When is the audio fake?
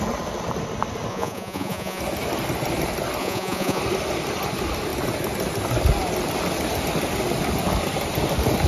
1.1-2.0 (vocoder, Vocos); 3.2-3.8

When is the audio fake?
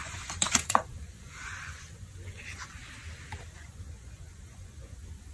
0.0-2.8 (vocoder, Vocos); 3.5-5.3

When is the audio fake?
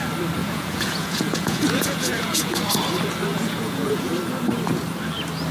0.4-2.6 (vocoder, Vocos); 3.3-4.1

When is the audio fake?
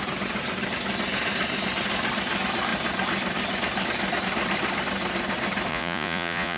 5.7-6.6 (vocoder, Vocos)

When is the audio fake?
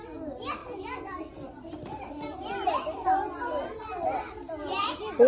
none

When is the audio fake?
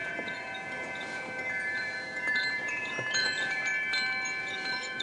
0.0-3.7 (vocoder, Vocos); 4.4-5.0